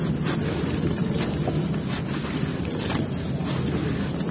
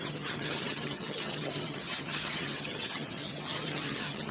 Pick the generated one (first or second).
second